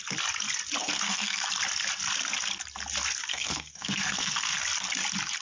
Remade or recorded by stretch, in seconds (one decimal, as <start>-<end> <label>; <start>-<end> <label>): 0.0-0.8 recorded; 0.8-1.5 remade; 1.5-3.3 recorded; 3.3-4.6 remade; 4.6-5.4 recorded